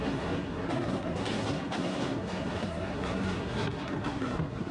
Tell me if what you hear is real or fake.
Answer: fake